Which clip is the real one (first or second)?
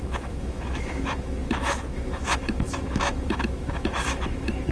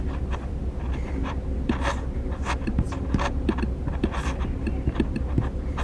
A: second